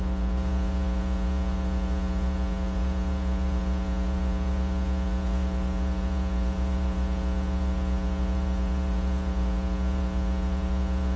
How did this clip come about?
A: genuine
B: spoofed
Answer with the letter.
B